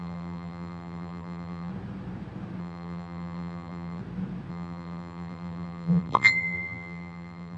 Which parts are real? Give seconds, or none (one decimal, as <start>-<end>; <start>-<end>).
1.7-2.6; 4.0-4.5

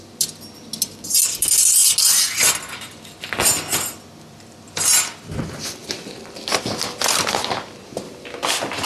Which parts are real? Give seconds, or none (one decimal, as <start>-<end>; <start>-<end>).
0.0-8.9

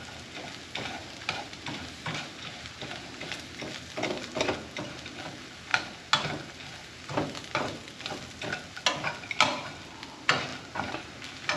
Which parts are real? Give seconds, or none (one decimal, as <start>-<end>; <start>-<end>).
0.0-1.0; 3.5-11.6

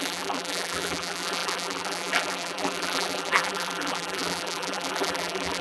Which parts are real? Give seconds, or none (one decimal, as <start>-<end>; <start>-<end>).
none

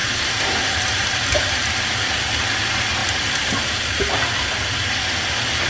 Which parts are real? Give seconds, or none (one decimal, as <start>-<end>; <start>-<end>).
1.4-3.0; 4.0-5.7

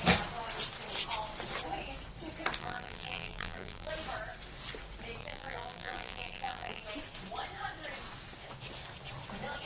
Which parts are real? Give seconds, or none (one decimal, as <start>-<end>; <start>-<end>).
0.0-2.6; 3.9-5.2; 6.8-9.7

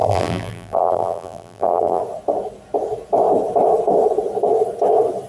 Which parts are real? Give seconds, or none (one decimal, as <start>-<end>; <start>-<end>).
2.0-5.3

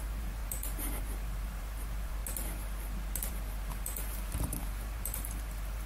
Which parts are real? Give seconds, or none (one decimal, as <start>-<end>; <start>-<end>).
2.2-3.3